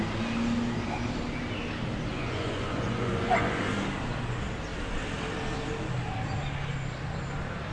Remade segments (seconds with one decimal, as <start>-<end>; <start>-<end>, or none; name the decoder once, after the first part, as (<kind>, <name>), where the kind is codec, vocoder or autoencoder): 2.1-3.6 (vocoder, Vocos)